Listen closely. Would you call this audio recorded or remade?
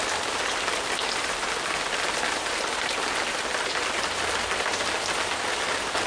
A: recorded